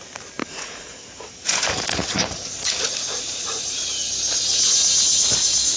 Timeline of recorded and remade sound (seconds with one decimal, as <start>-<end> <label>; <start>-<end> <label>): 0.0-0.4 recorded; 0.4-1.3 remade; 1.3-1.9 recorded; 1.9-3.9 remade; 3.9-5.8 recorded